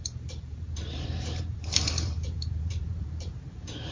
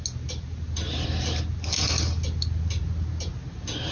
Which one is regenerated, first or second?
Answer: first